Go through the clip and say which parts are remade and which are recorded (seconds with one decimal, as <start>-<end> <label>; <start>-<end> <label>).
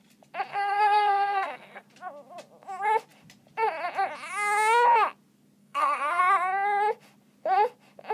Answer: 0.0-0.5 recorded; 0.5-1.8 remade; 1.8-5.6 recorded; 5.6-6.2 remade; 6.2-8.1 recorded